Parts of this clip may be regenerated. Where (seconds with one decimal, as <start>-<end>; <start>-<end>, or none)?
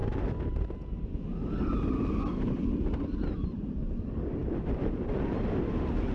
none